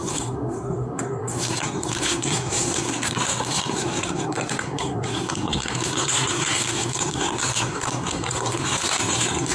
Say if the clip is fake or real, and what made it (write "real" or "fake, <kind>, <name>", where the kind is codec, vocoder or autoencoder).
fake, codec, SNAC